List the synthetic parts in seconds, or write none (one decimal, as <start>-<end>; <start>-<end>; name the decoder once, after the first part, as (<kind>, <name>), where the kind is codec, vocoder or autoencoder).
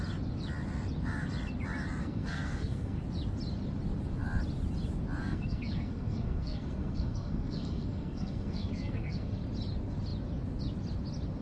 2.0-3.0 (codec, SNAC); 5.2-9.3